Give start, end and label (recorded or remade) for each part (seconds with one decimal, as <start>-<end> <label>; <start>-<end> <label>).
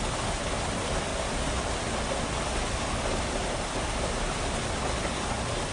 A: 0.0-5.7 recorded